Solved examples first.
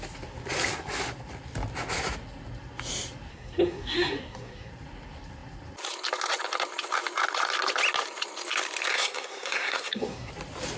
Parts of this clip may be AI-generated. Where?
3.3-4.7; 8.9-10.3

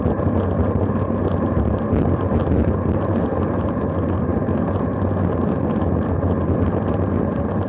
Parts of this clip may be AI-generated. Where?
none

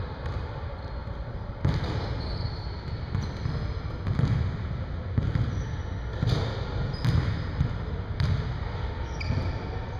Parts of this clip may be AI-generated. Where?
none

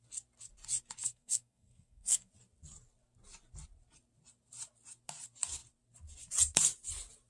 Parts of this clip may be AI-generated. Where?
1.0-2.3

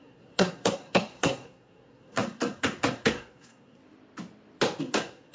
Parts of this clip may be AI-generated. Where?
0.0-3.8; 4.8-5.3

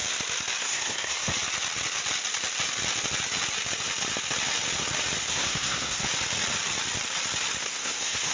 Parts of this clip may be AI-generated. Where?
0.6-1.3; 5.3-6.0; 7.6-8.3

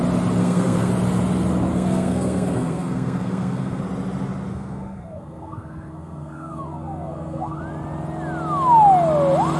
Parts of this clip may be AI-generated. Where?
0.4-0.9; 1.7-3.8; 4.5-7.6